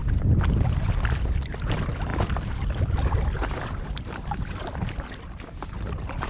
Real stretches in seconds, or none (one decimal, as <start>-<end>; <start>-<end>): 1.5-2.1; 4.1-6.3